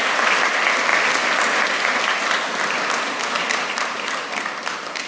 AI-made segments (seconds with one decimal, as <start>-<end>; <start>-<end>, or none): none